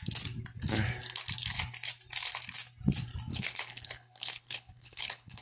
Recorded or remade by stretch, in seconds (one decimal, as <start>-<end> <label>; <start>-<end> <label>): 0.0-3.3 recorded; 3.3-5.4 remade